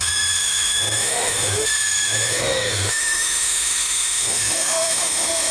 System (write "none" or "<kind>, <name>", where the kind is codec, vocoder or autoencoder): autoencoder, DAC-VAE